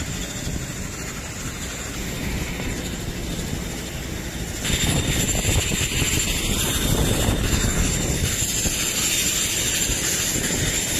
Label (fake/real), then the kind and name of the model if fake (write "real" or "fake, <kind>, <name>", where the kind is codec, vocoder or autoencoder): real